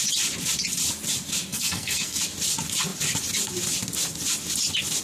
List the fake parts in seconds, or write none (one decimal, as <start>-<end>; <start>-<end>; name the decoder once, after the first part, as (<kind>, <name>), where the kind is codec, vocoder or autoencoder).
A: 1.5-2.2 (codec, SNAC)